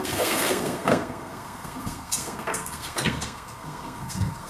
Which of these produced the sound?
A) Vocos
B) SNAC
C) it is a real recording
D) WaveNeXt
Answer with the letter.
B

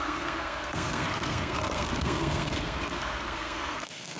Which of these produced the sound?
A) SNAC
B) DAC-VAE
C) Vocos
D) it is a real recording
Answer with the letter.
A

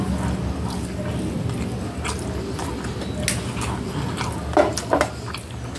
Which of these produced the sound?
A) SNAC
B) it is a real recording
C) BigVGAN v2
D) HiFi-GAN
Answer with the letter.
B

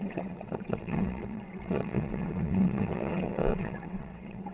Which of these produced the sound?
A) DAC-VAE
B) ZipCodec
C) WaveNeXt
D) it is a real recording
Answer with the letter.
C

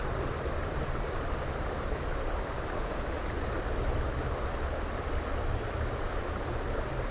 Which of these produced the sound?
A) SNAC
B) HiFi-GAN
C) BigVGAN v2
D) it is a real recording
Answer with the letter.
C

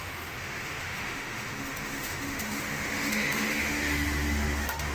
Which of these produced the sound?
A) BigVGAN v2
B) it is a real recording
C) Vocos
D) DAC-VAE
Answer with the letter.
D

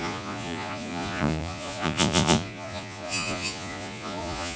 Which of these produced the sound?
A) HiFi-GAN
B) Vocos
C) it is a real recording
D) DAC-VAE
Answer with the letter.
B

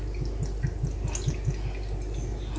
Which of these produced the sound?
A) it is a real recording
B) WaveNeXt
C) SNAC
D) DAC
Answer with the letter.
A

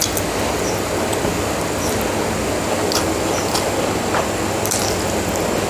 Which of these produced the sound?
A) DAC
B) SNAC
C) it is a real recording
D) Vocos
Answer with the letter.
C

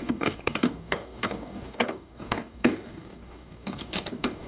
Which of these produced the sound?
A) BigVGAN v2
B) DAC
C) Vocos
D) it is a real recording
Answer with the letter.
B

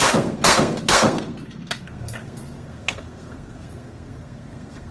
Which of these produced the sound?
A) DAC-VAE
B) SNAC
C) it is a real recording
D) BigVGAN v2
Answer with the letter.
B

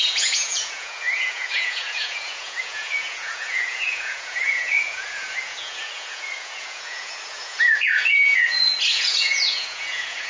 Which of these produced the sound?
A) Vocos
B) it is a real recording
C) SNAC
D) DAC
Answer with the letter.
A